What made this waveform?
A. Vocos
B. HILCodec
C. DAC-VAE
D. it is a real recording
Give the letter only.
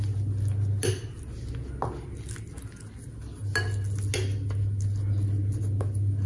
D